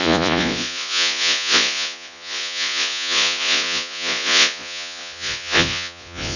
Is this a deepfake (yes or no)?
yes